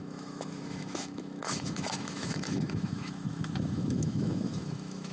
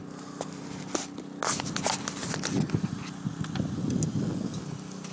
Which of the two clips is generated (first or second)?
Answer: first